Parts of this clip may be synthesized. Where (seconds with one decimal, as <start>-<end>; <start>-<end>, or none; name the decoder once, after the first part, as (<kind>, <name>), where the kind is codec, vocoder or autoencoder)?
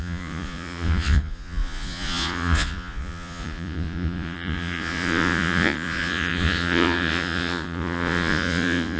0.0-9.0 (vocoder, Vocos)